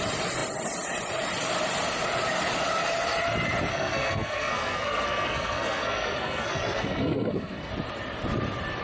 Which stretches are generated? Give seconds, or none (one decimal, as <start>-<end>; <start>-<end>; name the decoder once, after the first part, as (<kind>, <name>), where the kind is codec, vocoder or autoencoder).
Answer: 3.7-7.7 (codec, SNAC)